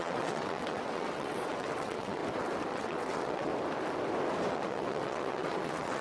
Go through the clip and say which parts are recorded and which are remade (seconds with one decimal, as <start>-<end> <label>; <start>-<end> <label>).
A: 0.0-2.2 remade; 2.2-2.7 recorded; 2.7-3.5 remade; 3.5-4.5 recorded; 4.5-6.0 remade